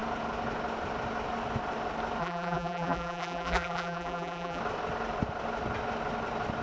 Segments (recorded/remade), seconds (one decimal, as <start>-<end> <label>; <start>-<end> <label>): 0.0-2.2 recorded; 2.2-4.6 remade; 4.6-6.6 recorded